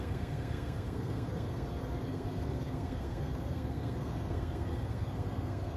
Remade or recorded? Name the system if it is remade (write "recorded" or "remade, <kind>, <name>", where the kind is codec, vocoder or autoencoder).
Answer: remade, codec, SNAC